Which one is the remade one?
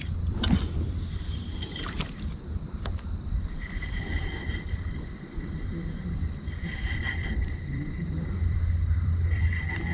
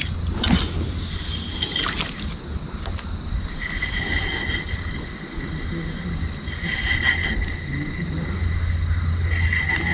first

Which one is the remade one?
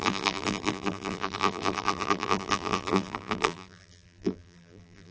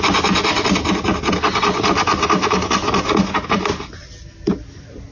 first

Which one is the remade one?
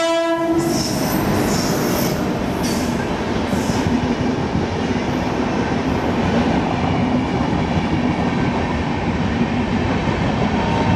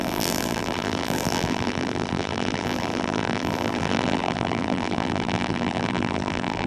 second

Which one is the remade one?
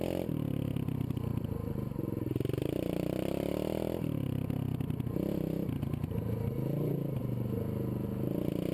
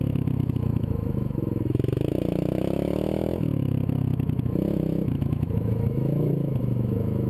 second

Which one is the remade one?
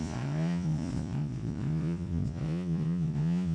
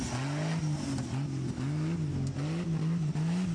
first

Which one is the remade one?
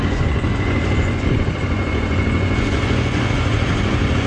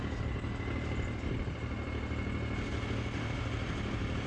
first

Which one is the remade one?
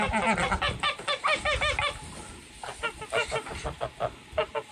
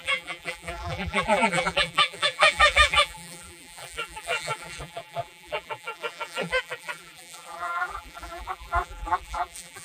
second